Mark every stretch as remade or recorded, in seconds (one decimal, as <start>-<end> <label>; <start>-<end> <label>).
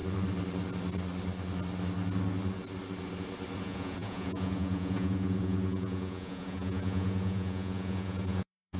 0.0-3.6 recorded; 3.6-8.8 remade